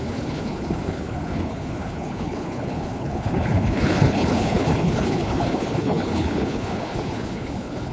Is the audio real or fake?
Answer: fake